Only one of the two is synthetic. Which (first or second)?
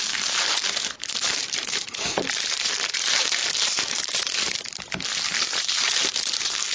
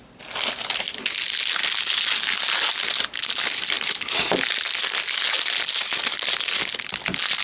first